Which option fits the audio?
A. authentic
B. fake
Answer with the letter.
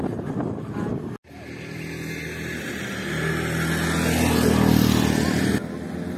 A